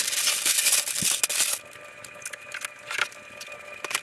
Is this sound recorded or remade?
recorded